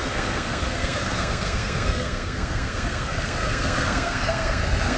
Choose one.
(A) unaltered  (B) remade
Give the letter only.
B